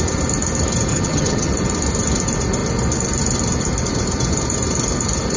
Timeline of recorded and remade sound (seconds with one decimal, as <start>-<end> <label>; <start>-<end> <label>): 0.0-0.9 recorded; 0.9-1.5 remade; 1.5-5.4 recorded